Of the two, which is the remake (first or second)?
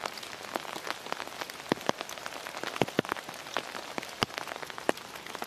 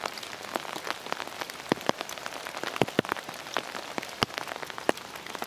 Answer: second